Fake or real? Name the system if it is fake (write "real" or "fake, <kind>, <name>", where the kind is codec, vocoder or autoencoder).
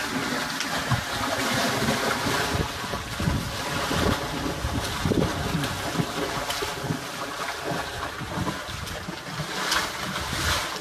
real